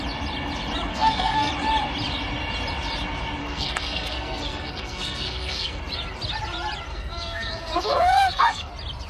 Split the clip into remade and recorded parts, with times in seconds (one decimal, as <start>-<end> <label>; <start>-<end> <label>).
0.0-0.9 recorded; 0.9-1.5 remade; 1.5-3.4 recorded; 3.4-5.8 remade; 5.8-6.9 recorded; 6.9-8.7 remade; 8.7-9.1 recorded

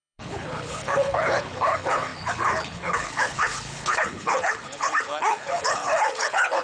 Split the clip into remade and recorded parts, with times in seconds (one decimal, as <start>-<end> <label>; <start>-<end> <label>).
0.0-6.6 remade

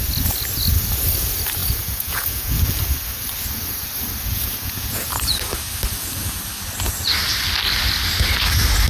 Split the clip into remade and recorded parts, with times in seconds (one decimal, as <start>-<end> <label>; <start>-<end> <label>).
0.0-1.6 recorded; 1.6-2.6 remade; 2.6-4.3 recorded; 4.3-5.1 remade; 5.1-8.9 recorded

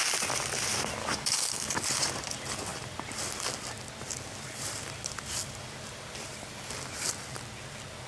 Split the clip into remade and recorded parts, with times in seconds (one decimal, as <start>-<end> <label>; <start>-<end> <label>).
0.0-1.0 recorded; 1.0-1.8 remade; 1.8-8.1 recorded

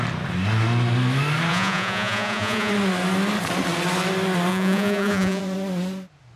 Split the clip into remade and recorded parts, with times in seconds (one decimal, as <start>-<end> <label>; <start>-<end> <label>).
0.0-1.5 recorded; 1.5-2.7 remade; 2.7-4.5 recorded; 4.5-5.4 remade; 5.4-6.4 recorded

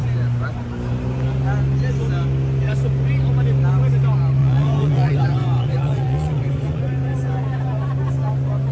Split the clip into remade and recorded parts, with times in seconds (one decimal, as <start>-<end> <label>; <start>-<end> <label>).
0.0-4.4 recorded; 4.4-6.8 remade; 6.8-8.7 recorded

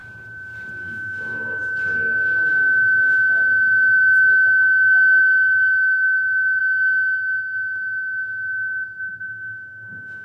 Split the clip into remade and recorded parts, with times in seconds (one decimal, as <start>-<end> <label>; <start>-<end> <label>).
0.0-0.8 recorded; 0.8-1.6 remade; 1.6-2.5 recorded; 2.5-4.0 remade; 4.0-5.2 recorded; 5.2-6.6 remade; 6.6-9.2 recorded; 9.2-10.2 remade

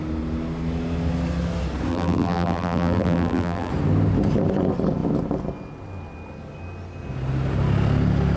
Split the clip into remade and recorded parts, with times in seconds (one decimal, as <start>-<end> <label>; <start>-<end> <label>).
0.0-1.9 recorded; 1.9-3.7 remade; 3.7-8.4 recorded